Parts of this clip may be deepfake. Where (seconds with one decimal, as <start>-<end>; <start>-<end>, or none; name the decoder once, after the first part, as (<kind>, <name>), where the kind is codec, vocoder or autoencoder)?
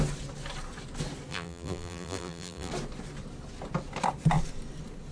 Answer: 1.3-2.7 (vocoder, BigVGAN v2)